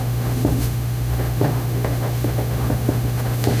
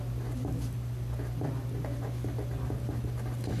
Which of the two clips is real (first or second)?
second